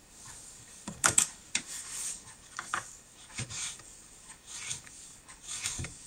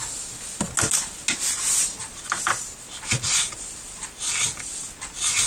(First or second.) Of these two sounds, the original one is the second